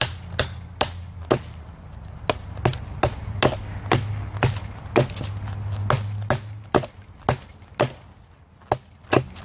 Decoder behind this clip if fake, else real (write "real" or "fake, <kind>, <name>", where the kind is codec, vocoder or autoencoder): real